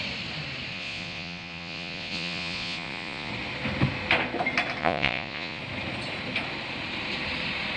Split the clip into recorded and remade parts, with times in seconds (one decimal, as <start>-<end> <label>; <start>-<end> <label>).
0.0-0.7 recorded; 0.7-3.3 remade; 3.3-4.8 recorded; 4.8-5.6 remade; 5.6-7.8 recorded